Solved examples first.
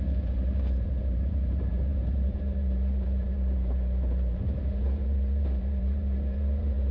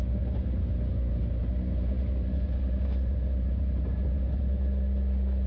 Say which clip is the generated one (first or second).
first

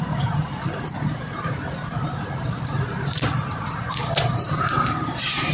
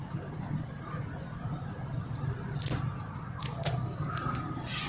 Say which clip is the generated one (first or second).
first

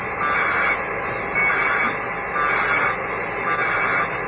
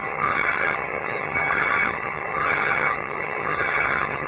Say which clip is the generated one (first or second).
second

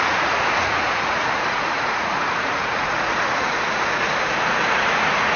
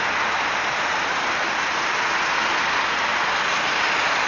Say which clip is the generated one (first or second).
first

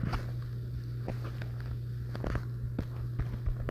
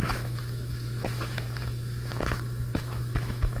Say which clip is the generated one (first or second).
second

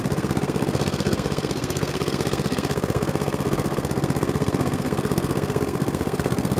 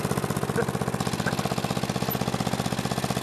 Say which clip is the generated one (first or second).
first